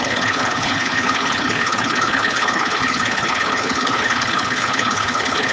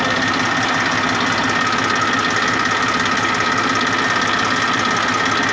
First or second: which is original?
second